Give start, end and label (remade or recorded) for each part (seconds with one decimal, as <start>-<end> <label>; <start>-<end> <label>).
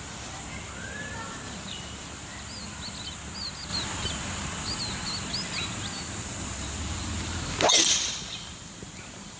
0.0-9.4 recorded